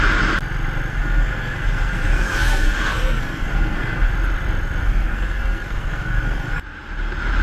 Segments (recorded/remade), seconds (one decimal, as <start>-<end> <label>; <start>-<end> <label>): 0.0-0.9 recorded; 0.9-4.1 remade; 4.1-4.8 recorded; 4.8-6.6 remade; 6.6-7.4 recorded